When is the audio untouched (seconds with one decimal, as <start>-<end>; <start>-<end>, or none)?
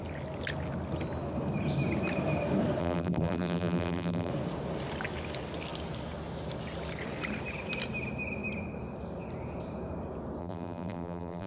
0.0-2.8; 4.3-10.4